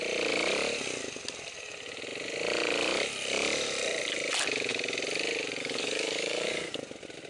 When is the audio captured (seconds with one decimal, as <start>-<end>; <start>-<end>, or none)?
0.0-5.6; 6.7-7.3